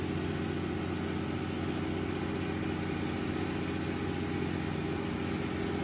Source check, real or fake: real